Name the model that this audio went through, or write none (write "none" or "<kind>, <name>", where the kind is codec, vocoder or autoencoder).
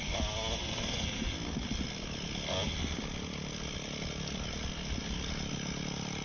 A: none